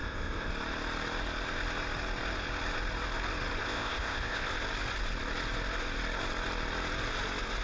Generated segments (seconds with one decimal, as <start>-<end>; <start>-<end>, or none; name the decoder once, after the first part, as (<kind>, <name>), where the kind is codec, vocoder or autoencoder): 0.0-0.5 (codec, ZipCodec); 3.6-4.5